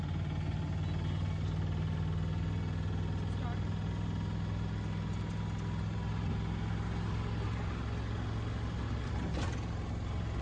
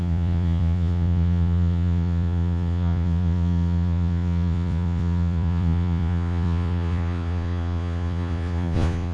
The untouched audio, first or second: first